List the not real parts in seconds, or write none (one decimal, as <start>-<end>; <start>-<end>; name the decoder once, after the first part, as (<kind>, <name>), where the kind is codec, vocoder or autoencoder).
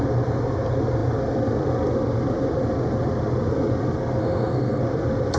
4.2-4.8 (codec, SNAC)